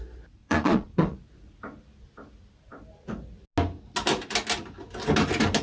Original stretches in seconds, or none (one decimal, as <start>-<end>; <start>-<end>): 0.0-0.4; 1.2-5.6

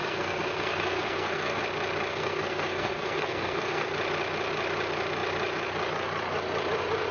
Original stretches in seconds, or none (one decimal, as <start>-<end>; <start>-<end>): 1.6-2.1; 3.9-7.1

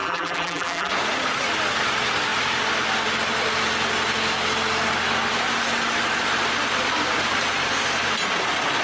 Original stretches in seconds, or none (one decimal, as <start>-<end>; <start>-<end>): 0.9-8.8

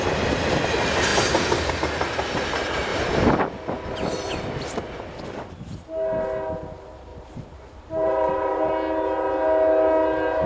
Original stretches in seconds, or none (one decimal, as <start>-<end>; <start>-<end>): 0.0-1.1; 1.7-2.9; 3.4-7.1; 8.7-10.5